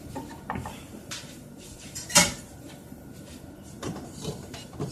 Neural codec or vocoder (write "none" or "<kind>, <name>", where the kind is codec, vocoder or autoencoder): vocoder, BigVGAN v2